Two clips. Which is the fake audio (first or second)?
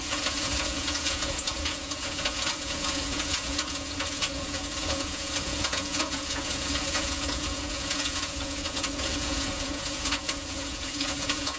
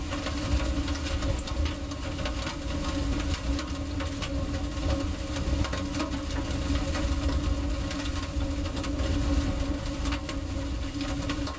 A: first